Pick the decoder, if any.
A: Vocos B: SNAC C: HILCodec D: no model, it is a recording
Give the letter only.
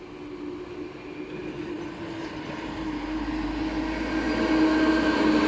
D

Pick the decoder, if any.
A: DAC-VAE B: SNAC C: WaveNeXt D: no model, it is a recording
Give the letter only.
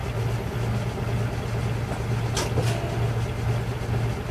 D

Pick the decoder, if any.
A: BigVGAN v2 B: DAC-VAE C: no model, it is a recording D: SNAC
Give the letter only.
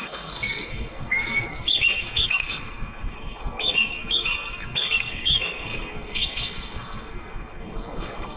D